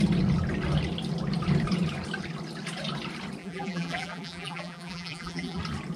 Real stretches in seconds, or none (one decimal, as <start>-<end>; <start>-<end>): 0.0-3.4; 5.6-6.0